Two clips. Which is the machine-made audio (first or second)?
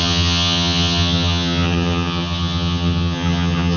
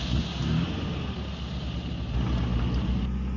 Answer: first